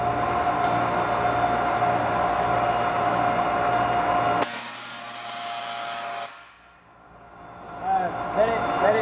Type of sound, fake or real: real